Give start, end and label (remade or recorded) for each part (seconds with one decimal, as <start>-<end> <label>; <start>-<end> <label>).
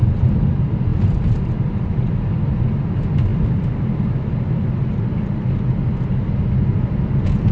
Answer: 0.0-0.9 recorded; 0.9-1.8 remade; 1.8-7.5 recorded